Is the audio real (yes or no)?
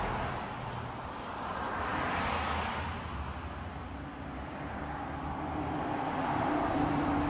yes